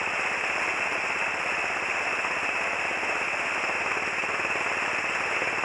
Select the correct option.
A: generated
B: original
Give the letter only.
B